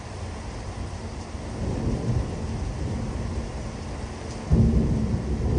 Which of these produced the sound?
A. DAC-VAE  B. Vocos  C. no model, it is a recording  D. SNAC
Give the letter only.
C